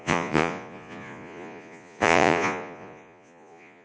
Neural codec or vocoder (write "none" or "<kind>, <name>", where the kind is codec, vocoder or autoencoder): vocoder, Vocos